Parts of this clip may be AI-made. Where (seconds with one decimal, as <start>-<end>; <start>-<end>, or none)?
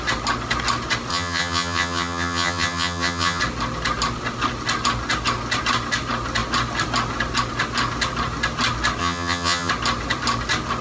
1.1-3.4; 9.0-9.7